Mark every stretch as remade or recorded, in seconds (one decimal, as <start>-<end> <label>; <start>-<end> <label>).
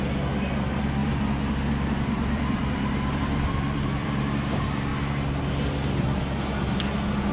0.0-1.0 recorded; 1.0-4.2 remade; 4.2-7.3 recorded